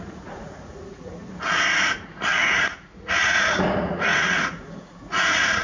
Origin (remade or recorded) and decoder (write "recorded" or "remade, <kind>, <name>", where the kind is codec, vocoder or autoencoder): remade, vocoder, Vocos